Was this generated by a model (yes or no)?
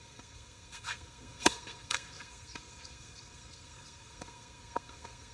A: yes